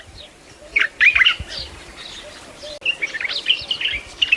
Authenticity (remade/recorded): recorded